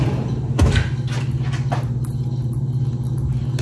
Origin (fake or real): real